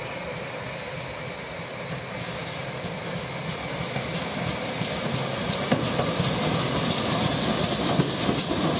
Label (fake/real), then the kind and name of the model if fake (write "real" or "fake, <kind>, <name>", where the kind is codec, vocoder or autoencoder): real